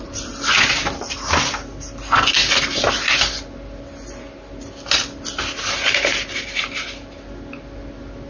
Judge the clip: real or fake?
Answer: real